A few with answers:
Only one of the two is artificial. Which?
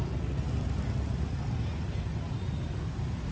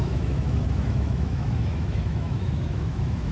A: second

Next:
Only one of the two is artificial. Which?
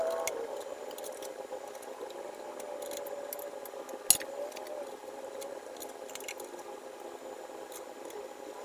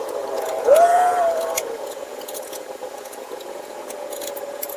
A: second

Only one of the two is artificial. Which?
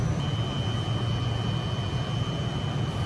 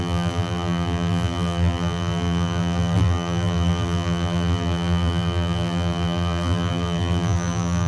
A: second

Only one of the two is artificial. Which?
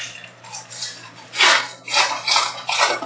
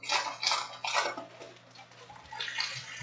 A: first